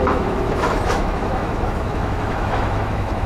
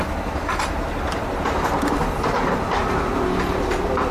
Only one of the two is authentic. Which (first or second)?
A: second